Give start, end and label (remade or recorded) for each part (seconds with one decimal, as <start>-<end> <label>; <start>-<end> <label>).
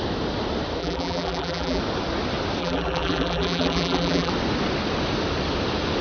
0.0-0.8 recorded; 0.8-1.8 remade; 1.8-2.6 recorded; 2.6-4.3 remade; 4.3-6.0 recorded